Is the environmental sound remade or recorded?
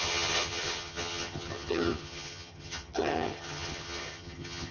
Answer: remade